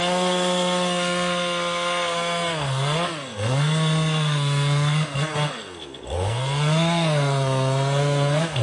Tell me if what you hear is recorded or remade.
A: remade